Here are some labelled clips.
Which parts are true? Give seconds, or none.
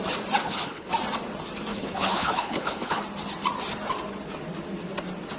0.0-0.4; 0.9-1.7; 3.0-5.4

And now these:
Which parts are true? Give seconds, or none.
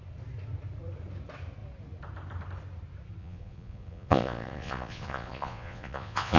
0.0-3.2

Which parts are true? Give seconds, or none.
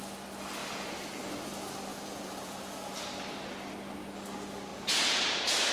0.0-0.6; 1.2-1.9; 2.9-4.7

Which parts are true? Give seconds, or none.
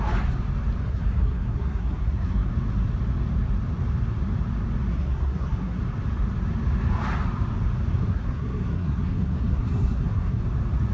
0.0-0.8; 2.5-4.9; 5.8-8.0; 10.4-10.9